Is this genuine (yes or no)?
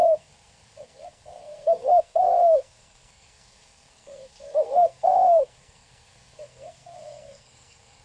no